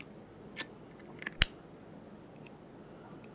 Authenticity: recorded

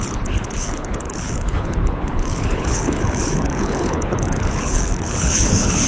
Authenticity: remade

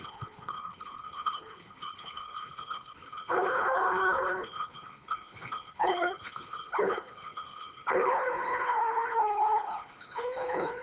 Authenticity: remade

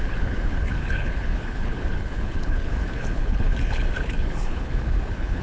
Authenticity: remade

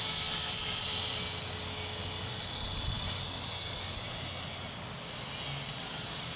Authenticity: recorded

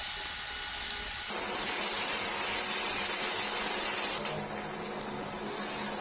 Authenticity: recorded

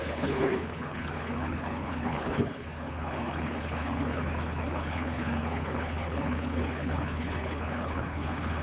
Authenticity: remade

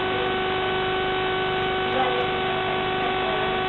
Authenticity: recorded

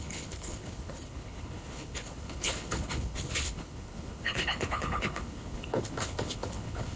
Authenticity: remade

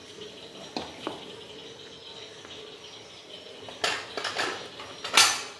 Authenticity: recorded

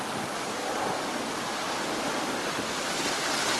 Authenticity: recorded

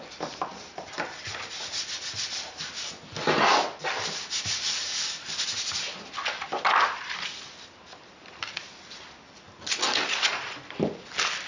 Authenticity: recorded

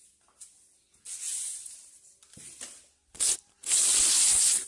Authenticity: recorded